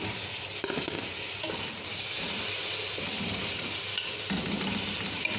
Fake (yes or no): no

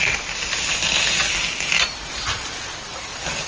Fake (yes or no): no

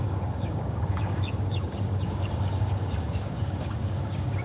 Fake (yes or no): yes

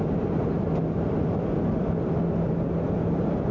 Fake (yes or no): no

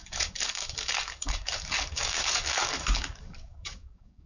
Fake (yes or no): yes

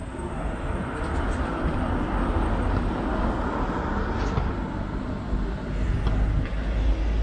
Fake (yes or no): no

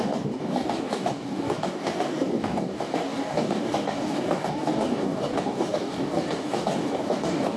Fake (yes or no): yes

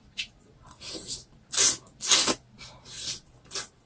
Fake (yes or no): no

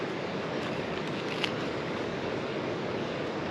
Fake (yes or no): yes